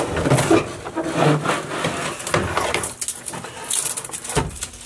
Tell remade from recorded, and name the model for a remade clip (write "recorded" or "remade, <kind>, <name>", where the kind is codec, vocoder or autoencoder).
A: recorded